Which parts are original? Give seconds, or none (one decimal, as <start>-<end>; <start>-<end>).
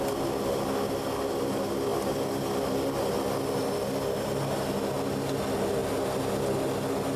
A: 0.0-7.2